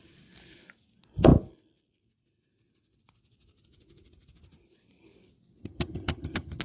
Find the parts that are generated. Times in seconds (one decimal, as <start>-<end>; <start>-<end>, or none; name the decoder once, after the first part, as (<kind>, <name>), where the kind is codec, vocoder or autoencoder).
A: 5.6-6.6 (vocoder, HiFi-GAN)